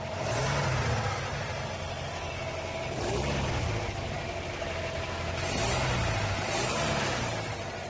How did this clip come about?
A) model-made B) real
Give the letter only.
B